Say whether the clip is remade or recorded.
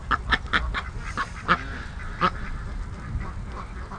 recorded